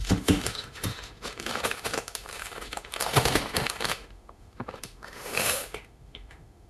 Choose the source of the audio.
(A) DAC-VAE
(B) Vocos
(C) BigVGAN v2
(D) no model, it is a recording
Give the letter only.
A